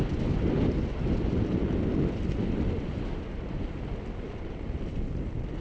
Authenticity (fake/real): real